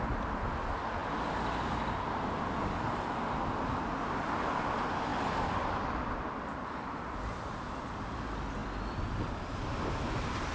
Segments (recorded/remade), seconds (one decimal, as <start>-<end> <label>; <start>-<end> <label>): 0.0-8.6 recorded; 8.6-9.2 remade; 9.2-10.5 recorded